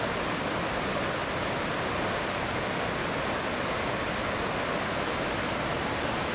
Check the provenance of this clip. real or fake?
real